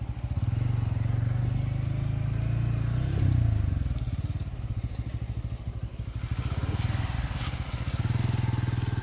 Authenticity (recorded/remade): recorded